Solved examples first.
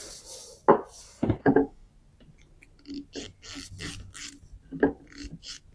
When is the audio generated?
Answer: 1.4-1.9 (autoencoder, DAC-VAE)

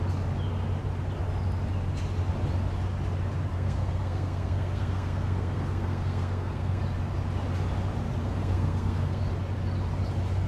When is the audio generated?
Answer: 3.5-6.8 (codec, SNAC); 8.2-9.2